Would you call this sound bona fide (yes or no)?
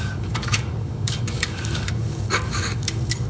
no